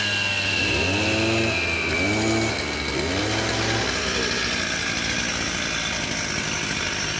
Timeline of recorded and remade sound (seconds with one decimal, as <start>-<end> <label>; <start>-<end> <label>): 0.0-7.2 recorded